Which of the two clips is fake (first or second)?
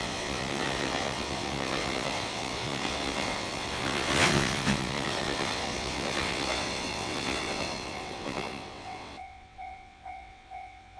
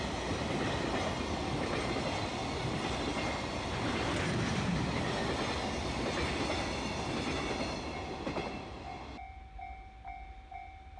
first